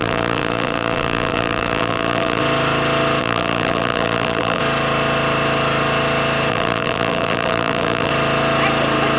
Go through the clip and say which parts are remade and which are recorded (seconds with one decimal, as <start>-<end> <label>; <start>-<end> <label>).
0.0-2.4 remade; 2.4-3.2 recorded; 3.2-4.6 remade; 4.6-6.5 recorded; 6.5-8.1 remade; 8.1-9.2 recorded